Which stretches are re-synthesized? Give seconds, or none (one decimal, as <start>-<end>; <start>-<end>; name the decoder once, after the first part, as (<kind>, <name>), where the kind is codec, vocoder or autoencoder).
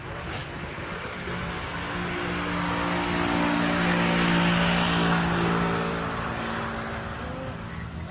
0.4-1.7 (vocoder, BigVGAN v2)